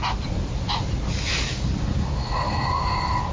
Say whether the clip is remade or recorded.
recorded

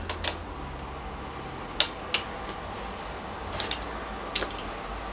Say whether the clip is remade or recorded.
recorded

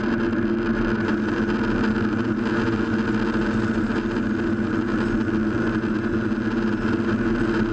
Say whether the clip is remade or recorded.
recorded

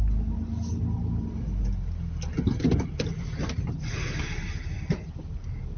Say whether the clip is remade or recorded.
recorded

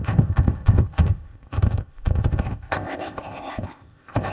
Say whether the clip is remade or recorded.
remade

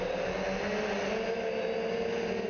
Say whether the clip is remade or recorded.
recorded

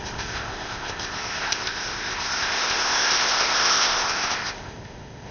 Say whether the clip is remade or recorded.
remade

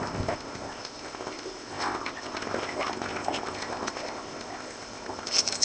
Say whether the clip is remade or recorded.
remade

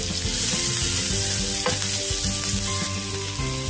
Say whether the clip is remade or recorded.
recorded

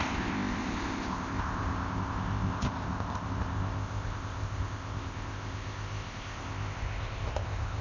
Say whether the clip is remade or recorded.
remade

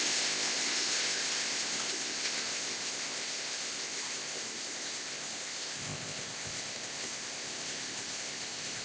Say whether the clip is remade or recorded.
remade